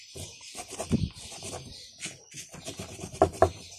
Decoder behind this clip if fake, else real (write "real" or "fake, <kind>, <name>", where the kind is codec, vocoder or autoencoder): real